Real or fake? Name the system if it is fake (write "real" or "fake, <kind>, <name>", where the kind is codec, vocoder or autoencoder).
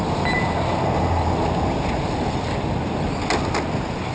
real